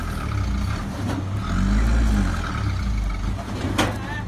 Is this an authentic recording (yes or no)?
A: yes